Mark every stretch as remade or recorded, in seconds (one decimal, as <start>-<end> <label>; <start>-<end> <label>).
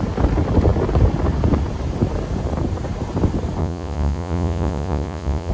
0.0-3.6 recorded; 3.6-5.5 remade